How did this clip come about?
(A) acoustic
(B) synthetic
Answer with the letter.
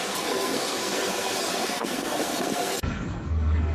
B